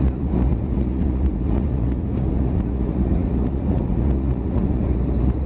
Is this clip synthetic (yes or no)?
yes